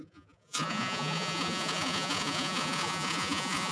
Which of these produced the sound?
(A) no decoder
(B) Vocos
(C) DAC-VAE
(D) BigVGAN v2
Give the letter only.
B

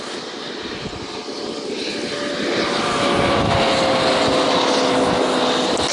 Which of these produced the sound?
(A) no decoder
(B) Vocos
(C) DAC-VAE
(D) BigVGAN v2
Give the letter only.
A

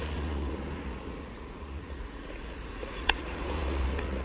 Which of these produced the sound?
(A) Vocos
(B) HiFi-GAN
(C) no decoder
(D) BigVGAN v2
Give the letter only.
A